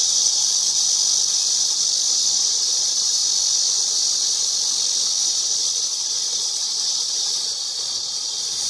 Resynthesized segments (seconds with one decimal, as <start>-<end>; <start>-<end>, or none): 0.0-0.4; 2.1-3.2; 5.2-8.7